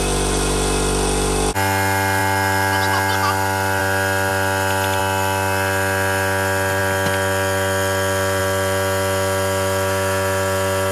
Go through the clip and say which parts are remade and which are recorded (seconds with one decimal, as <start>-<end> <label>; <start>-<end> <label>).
0.0-4.3 recorded; 4.3-5.0 remade; 5.0-10.9 recorded